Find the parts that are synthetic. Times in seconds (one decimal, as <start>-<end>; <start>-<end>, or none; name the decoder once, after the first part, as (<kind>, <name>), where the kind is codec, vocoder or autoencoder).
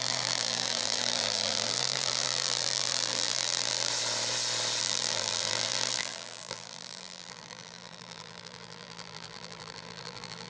0.0-3.9 (vocoder, BigVGAN v2); 4.8-10.5